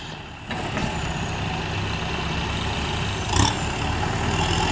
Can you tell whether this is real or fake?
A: real